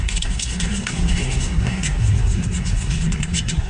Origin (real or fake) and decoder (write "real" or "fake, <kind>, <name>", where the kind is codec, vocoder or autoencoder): fake, codec, SNAC